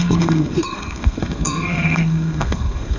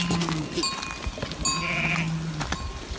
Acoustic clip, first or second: second